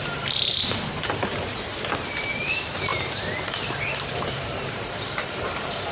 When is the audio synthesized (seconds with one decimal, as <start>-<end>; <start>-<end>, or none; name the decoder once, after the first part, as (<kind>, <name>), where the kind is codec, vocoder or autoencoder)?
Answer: 0.0-5.9 (vocoder, BigVGAN v2)